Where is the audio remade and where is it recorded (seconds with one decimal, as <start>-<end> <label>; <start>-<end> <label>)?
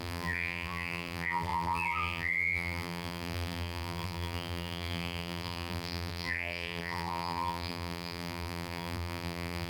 0.0-9.7 remade